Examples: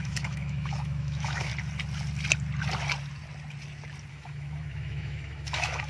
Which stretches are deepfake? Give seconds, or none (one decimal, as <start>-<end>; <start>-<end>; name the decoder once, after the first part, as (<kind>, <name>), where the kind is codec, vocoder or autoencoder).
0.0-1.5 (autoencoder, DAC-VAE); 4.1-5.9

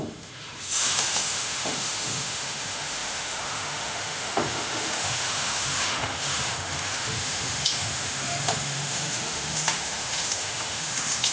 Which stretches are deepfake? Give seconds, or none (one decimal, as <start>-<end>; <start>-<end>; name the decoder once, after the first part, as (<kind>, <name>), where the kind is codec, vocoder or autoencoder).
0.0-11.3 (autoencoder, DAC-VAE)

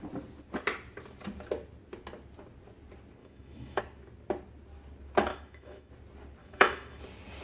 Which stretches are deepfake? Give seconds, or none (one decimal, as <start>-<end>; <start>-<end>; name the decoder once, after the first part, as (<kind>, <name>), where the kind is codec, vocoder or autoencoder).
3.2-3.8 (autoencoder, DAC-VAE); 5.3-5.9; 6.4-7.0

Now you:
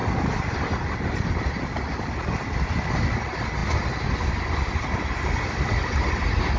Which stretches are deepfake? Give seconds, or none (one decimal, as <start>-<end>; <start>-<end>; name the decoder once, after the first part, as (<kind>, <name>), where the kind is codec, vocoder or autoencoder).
none

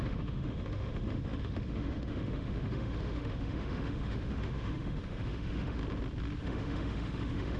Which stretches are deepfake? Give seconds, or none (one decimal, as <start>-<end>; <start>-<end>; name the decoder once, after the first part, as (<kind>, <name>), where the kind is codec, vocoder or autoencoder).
0.0-5.8 (autoencoder, DAC-VAE); 6.4-7.6